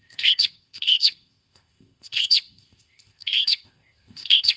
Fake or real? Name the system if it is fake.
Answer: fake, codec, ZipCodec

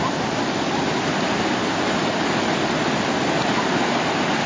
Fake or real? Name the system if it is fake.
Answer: real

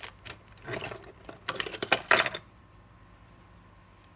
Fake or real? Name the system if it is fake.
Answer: fake, vocoder, BigVGAN v2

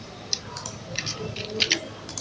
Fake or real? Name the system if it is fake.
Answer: fake, vocoder, BigVGAN v2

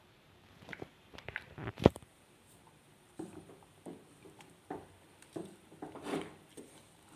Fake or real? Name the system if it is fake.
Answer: fake, vocoder, BigVGAN v2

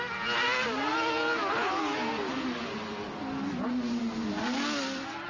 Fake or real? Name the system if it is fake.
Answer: real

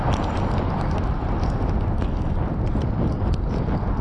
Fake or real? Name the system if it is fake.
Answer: real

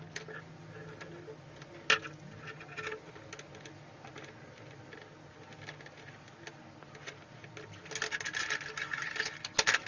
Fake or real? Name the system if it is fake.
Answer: real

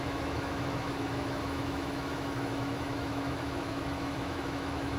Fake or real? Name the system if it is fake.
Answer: fake, autoencoder, DAC-VAE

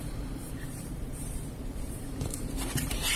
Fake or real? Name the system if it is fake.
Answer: fake, vocoder, BigVGAN v2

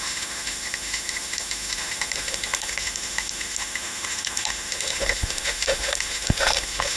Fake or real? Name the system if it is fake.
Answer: fake, autoencoder, DAC-VAE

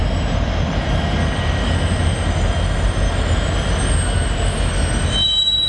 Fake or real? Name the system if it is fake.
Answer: real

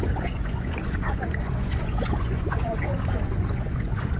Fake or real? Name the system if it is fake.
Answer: fake, vocoder, Vocos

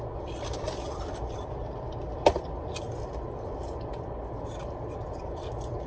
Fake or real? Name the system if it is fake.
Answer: real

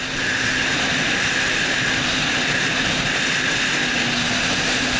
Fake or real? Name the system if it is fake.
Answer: real